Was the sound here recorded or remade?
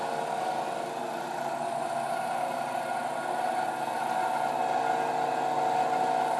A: recorded